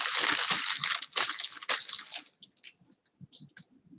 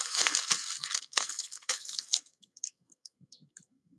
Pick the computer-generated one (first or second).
second